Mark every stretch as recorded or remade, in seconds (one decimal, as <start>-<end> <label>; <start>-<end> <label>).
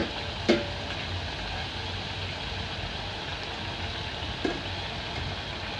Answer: 0.0-5.8 recorded